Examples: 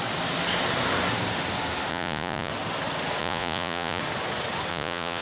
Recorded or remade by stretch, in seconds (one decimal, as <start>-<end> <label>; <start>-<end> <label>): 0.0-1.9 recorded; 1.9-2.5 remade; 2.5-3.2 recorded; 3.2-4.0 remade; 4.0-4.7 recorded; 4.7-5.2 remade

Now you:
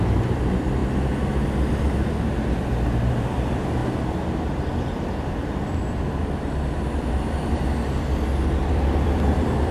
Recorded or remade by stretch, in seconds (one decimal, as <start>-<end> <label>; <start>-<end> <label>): 0.0-0.8 remade; 0.8-3.1 recorded; 3.1-3.8 remade; 3.8-8.7 recorded; 8.7-9.7 remade

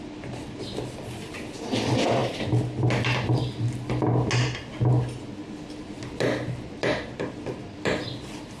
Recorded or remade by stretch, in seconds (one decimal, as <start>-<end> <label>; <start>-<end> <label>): 0.0-8.6 recorded

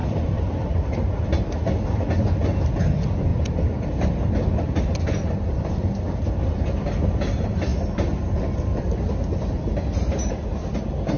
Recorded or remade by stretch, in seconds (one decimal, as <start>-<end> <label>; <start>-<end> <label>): 0.0-1.2 remade; 1.2-3.3 recorded; 3.3-4.8 remade; 4.8-11.2 recorded

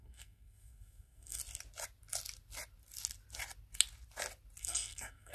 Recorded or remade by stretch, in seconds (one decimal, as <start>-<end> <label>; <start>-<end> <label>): 0.0-1.4 remade; 1.4-4.6 recorded; 4.6-5.3 remade

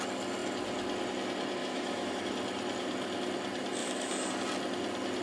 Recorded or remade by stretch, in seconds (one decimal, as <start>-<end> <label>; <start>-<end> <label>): 0.0-1.6 recorded; 1.6-2.2 remade; 2.2-3.8 recorded; 3.8-4.3 remade; 4.3-5.2 recorded

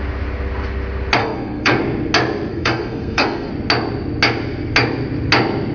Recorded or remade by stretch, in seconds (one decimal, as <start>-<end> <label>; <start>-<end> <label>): 0.0-1.2 recorded; 1.2-1.8 remade; 1.8-2.5 recorded; 2.5-3.5 remade; 3.5-5.7 recorded

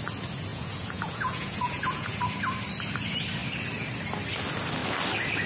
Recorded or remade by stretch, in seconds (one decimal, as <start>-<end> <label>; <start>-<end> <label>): 0.0-0.5 recorded; 0.5-2.2 remade; 2.2-5.5 recorded